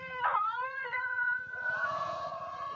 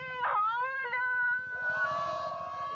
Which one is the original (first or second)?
second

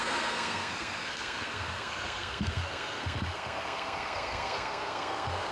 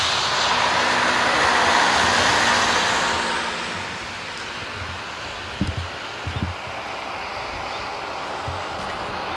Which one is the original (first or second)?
second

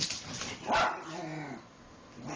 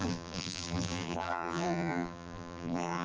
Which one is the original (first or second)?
first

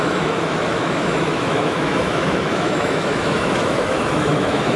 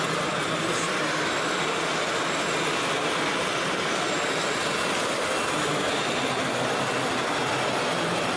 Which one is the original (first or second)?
second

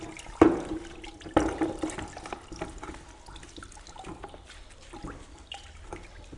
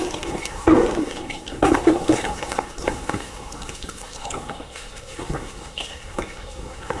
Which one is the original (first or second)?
first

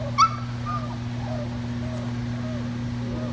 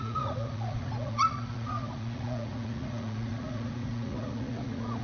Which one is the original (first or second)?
first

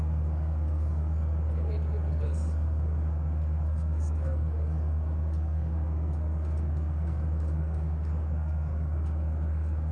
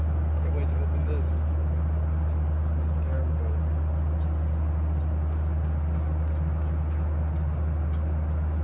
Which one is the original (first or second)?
second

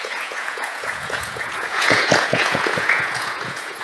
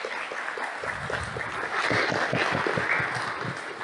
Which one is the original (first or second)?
second